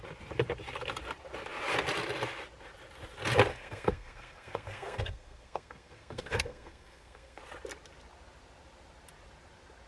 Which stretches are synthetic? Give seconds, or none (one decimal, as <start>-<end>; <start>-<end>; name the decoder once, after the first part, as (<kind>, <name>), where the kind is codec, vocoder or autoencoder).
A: 3.5-7.4 (codec, SNAC)